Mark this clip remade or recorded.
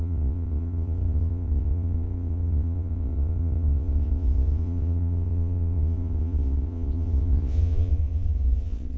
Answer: remade